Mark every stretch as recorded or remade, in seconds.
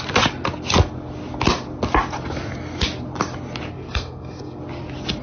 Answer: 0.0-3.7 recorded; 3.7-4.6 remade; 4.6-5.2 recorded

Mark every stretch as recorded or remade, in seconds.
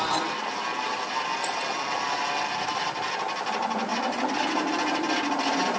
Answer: 0.0-5.8 recorded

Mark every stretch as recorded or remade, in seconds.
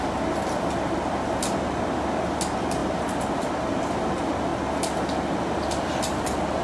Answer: 0.0-2.8 recorded; 2.8-3.6 remade; 3.6-6.6 recorded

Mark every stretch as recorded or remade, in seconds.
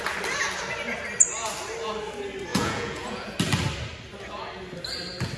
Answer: 0.0-2.5 recorded; 2.5-3.3 remade; 3.3-5.4 recorded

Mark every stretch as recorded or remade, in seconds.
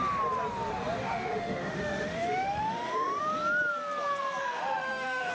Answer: 0.0-1.0 recorded; 1.0-3.2 remade; 3.2-4.4 recorded; 4.4-5.3 remade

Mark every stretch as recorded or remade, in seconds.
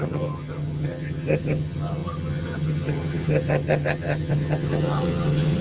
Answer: 0.0-5.6 remade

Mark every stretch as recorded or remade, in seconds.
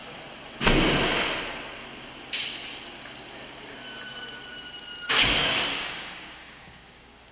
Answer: 0.0-5.4 recorded; 5.4-7.3 remade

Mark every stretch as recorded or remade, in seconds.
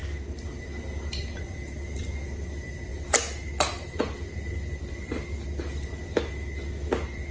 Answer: 0.0-7.3 recorded